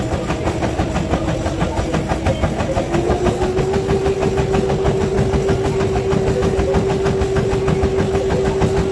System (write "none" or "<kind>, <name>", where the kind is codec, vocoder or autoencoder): none